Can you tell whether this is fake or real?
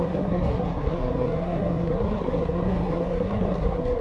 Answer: fake